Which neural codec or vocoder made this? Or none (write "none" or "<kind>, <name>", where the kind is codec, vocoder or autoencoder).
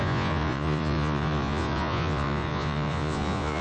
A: vocoder, Vocos